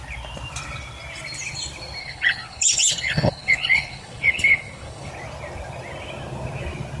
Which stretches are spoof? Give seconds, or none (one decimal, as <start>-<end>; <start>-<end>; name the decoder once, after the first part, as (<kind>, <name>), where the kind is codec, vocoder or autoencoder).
2.0-5.1 (codec, HILCodec)